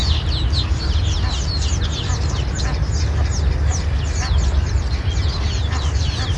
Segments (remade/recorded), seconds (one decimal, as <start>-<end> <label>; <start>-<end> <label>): 0.0-6.4 recorded

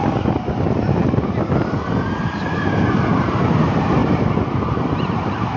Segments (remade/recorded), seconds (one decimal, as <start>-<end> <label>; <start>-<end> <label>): 0.0-5.6 recorded